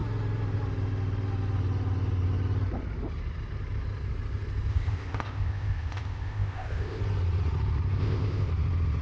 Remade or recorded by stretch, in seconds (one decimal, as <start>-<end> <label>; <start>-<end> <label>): 0.0-4.7 recorded; 4.7-7.0 remade; 7.0-8.0 recorded; 8.0-8.5 remade; 8.5-9.0 recorded